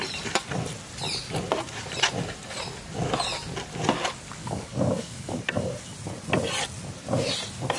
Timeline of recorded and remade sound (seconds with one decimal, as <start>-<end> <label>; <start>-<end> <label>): 0.0-4.4 recorded; 4.4-5.4 remade; 5.4-7.8 recorded